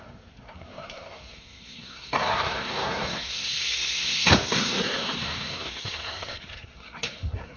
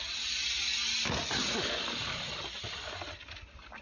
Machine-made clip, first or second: first